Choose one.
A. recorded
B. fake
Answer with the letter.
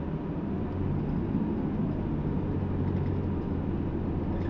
A